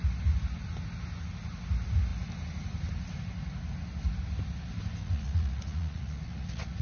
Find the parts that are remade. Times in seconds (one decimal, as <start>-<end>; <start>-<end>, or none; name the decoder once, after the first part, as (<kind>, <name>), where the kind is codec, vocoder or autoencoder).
5.0-6.8 (vocoder, Vocos)